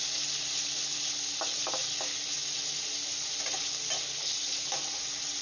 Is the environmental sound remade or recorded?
recorded